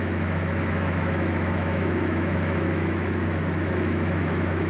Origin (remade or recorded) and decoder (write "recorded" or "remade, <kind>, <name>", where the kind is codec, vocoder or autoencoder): remade, autoencoder, DAC-VAE